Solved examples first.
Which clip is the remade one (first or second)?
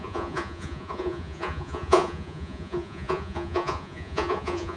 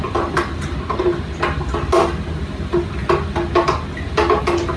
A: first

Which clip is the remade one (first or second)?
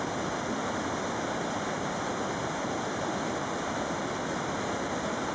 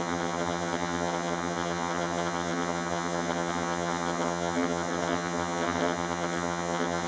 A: second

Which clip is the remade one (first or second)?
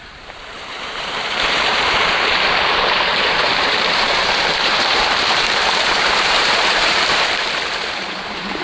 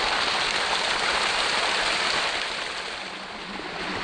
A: first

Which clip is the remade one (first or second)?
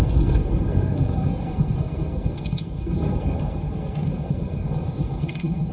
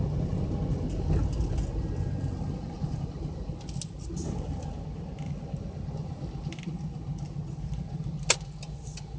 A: first